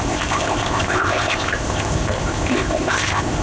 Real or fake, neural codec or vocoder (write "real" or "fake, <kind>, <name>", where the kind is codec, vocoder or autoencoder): fake, codec, ZipCodec